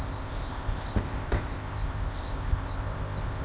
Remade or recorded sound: remade